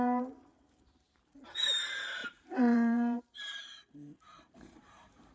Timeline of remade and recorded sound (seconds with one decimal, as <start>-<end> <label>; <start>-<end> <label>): 0.0-5.3 remade